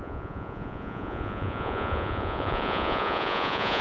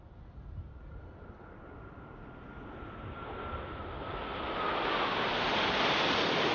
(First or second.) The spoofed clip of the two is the first